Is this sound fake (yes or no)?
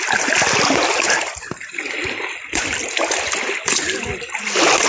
no